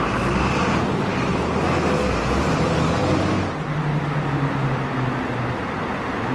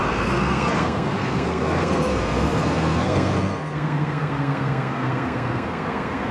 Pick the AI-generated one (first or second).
second